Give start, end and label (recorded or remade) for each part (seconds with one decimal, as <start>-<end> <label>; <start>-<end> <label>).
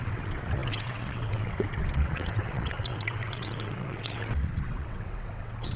0.0-5.8 remade